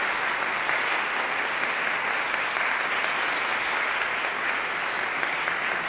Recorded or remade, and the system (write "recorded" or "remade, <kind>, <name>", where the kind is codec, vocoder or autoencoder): recorded